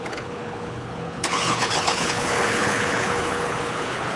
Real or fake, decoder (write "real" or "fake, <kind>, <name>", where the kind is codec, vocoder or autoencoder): fake, codec, HILCodec